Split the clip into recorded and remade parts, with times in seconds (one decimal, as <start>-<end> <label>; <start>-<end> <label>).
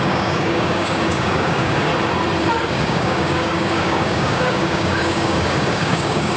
0.0-1.9 remade; 1.9-2.7 recorded; 2.7-6.4 remade